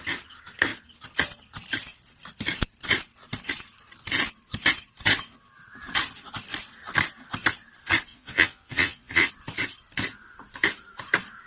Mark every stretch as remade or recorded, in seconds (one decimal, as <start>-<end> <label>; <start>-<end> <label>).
0.0-8.1 recorded; 8.1-9.3 remade; 9.3-11.5 recorded